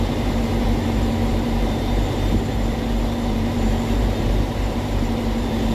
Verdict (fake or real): fake